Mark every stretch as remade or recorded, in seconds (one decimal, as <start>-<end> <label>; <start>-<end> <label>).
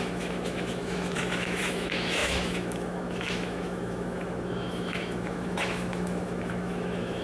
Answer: 0.0-7.2 remade